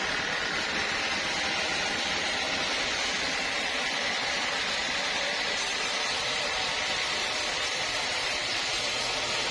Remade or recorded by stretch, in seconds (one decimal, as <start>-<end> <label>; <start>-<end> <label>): 0.0-4.8 recorded; 4.8-8.8 remade; 8.8-9.5 recorded